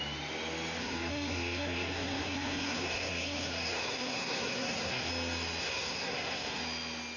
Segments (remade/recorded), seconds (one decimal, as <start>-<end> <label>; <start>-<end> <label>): 0.0-0.8 recorded; 0.8-5.1 remade; 5.1-5.6 recorded; 5.6-6.6 remade; 6.6-7.2 recorded